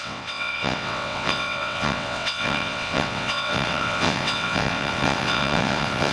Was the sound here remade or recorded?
remade